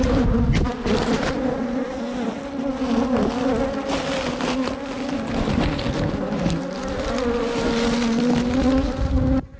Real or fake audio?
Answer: real